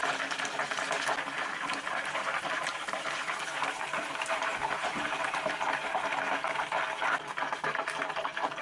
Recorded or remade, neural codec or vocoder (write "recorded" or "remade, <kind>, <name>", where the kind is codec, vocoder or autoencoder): recorded